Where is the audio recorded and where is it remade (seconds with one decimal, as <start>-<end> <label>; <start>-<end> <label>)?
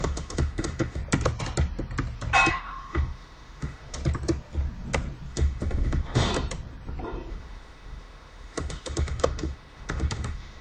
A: 0.0-1.0 remade; 1.0-2.5 recorded; 2.5-4.0 remade; 4.0-5.3 recorded; 5.3-6.3 remade; 6.3-7.3 recorded; 7.3-10.6 remade